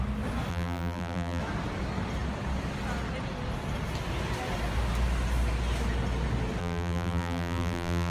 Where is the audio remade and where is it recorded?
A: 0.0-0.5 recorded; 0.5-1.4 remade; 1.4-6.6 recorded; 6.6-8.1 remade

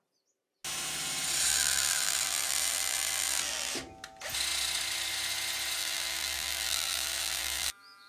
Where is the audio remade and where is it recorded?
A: 0.0-1.5 recorded; 1.5-3.7 remade; 3.7-5.8 recorded; 5.8-8.1 remade

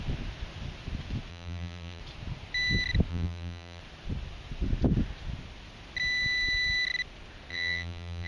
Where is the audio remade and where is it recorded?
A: 0.0-1.3 recorded; 1.3-2.0 remade; 2.0-3.1 recorded; 3.1-3.8 remade; 3.8-7.5 recorded; 7.5-8.3 remade

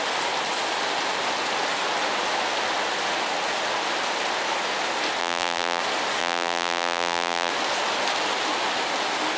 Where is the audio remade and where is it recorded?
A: 0.0-5.2 recorded; 5.2-5.8 remade; 5.8-6.2 recorded; 6.2-7.5 remade; 7.5-9.4 recorded

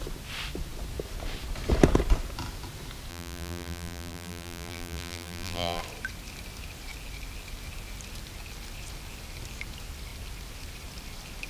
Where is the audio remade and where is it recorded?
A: 0.0-3.1 recorded; 3.1-5.8 remade; 5.8-11.5 recorded

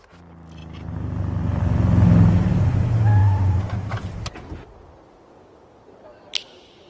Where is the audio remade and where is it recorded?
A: 0.0-3.2 recorded; 3.2-5.2 remade; 5.2-6.9 recorded

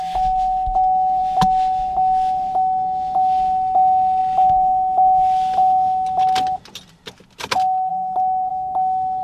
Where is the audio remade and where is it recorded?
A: 0.0-7.9 recorded; 7.9-8.5 remade; 8.5-9.2 recorded

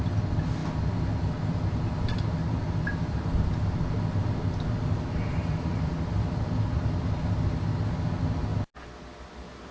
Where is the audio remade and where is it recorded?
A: 0.0-9.7 recorded